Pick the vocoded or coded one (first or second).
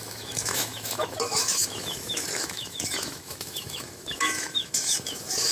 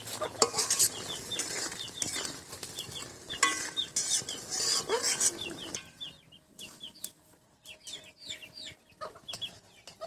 first